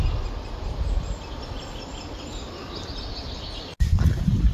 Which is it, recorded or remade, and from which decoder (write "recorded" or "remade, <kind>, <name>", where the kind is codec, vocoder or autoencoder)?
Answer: recorded